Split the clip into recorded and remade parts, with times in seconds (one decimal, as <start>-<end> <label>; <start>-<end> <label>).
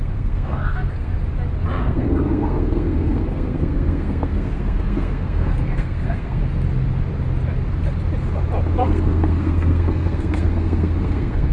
0.0-1.1 remade; 1.1-1.8 recorded; 1.8-6.4 remade; 6.4-8.8 recorded; 8.8-11.5 remade